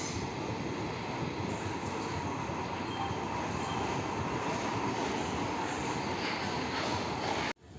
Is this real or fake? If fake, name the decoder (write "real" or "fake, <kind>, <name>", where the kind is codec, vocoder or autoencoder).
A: real